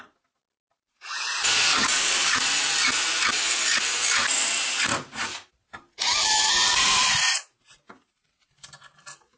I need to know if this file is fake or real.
fake